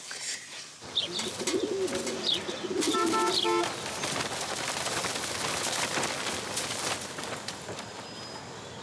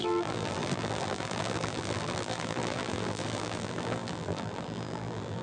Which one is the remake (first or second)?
second